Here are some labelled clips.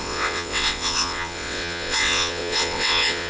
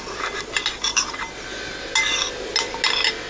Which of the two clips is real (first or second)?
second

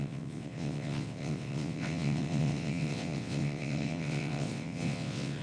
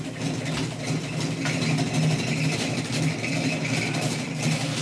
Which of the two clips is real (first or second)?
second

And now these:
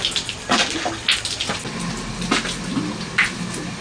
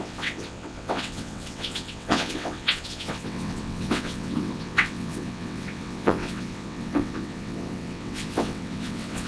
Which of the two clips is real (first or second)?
first